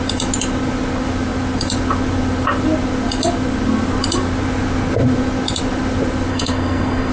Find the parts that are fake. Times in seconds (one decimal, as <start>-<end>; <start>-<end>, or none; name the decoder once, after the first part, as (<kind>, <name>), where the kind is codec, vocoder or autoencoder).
6.3-7.1 (codec, SNAC)